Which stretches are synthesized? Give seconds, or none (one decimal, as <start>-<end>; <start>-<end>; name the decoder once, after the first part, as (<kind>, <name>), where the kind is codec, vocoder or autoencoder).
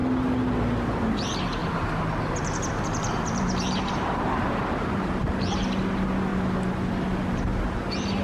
1.6-5.6 (vocoder, BigVGAN v2)